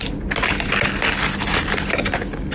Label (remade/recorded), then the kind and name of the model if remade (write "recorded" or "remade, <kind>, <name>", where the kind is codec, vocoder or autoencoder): recorded